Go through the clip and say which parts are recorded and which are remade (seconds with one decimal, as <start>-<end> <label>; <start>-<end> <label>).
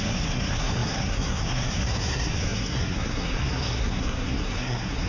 0.0-5.1 remade